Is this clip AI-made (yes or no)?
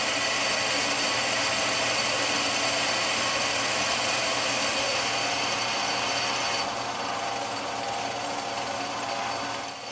no